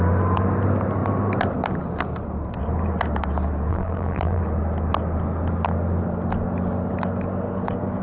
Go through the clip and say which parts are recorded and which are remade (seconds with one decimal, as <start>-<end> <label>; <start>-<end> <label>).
0.0-3.7 recorded; 3.7-4.4 remade; 4.4-8.0 recorded